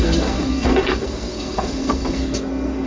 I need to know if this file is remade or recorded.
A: remade